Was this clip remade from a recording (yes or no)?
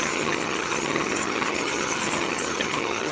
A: yes